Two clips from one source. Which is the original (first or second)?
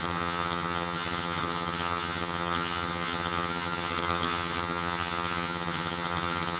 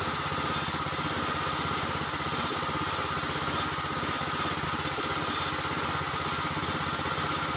second